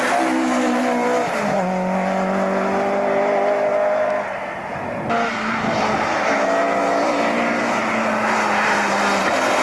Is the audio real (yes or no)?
yes